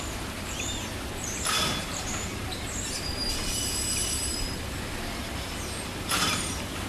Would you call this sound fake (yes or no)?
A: yes